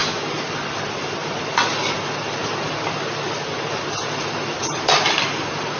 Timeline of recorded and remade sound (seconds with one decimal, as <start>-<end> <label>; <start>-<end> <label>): 0.0-5.8 recorded